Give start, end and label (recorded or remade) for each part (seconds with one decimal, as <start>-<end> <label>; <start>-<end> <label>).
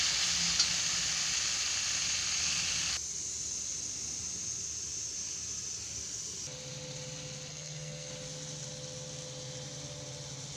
0.0-7.5 recorded; 7.5-8.1 remade; 8.1-10.6 recorded